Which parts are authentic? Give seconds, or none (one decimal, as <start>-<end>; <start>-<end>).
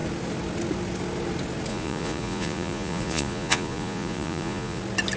0.0-1.7; 4.8-5.2